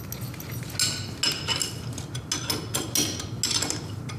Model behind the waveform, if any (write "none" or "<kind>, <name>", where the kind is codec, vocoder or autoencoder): none